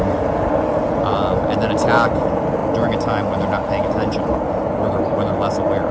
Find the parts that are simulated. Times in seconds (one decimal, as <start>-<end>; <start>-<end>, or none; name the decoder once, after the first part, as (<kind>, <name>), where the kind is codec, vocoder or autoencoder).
none